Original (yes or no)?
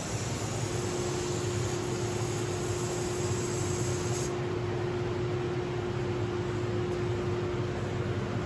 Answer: yes